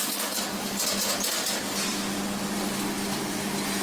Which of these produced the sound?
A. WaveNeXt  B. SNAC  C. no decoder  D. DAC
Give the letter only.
C